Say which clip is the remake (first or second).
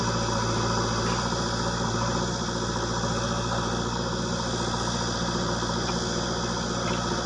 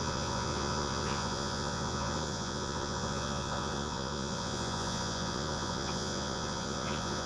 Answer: second